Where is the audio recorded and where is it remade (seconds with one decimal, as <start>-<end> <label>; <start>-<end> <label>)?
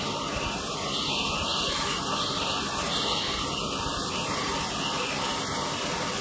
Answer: 0.0-6.2 recorded